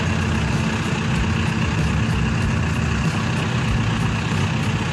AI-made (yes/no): no